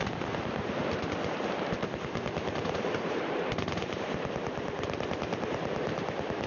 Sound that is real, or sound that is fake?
fake